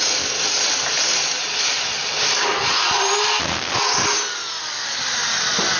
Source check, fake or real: real